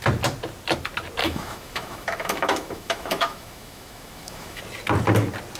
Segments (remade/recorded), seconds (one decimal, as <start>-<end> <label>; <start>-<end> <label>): 0.0-1.2 recorded; 1.2-4.6 remade; 4.6-5.6 recorded